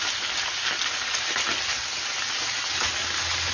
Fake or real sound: real